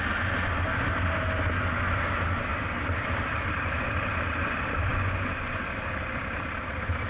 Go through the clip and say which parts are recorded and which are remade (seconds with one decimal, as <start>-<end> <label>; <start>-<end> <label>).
0.0-4.9 recorded; 4.9-5.6 remade; 5.6-7.1 recorded